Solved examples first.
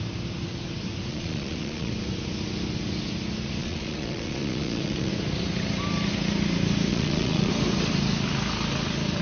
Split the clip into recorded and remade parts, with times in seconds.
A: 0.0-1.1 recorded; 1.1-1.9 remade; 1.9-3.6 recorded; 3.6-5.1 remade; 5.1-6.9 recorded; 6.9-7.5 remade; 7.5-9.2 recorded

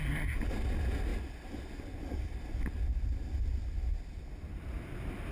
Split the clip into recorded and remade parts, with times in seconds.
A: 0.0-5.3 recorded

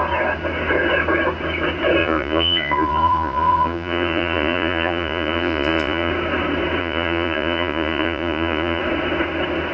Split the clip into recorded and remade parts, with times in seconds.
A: 0.0-2.0 recorded; 2.0-6.1 remade; 6.1-6.8 recorded; 6.8-8.8 remade; 8.8-9.7 recorded

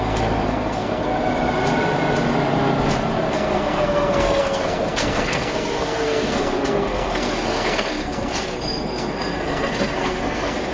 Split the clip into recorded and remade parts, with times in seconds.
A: 0.0-1.1 remade; 1.1-3.3 recorded; 3.3-10.7 remade